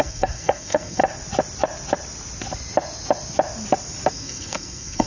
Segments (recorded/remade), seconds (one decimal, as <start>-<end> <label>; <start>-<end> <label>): 0.0-1.0 remade; 1.0-4.1 recorded; 4.1-5.1 remade